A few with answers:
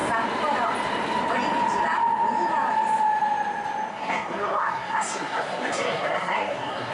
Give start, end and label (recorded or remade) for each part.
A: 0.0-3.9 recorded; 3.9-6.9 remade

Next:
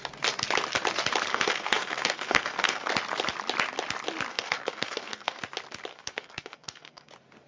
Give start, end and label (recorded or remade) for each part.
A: 0.0-1.3 recorded; 1.3-2.9 remade; 2.9-4.3 recorded; 4.3-5.4 remade; 5.4-5.9 recorded; 5.9-7.1 remade; 7.1-7.5 recorded